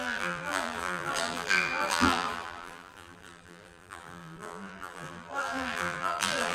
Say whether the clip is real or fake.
fake